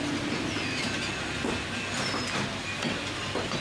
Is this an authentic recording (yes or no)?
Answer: yes